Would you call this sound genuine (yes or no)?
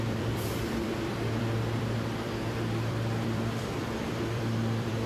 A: no